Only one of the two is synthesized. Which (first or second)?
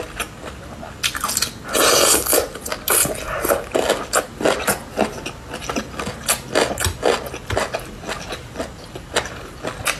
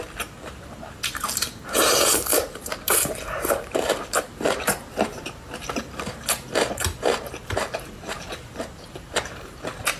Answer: second